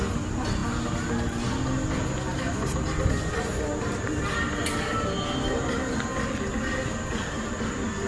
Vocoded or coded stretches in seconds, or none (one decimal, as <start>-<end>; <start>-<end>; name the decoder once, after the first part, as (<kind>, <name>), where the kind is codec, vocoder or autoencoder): none